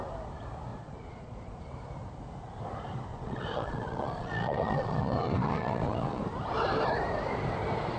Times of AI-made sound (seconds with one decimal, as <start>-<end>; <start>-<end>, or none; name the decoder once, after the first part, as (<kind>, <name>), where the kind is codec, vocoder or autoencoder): 0.7-1.6 (vocoder, Vocos); 3.1-6.2